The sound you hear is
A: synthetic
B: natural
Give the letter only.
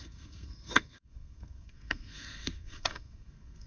A